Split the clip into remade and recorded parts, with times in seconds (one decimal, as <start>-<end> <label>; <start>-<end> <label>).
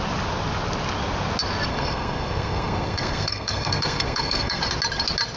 0.0-1.7 recorded; 1.7-4.6 remade; 4.6-5.4 recorded